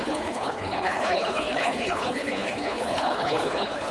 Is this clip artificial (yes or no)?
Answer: yes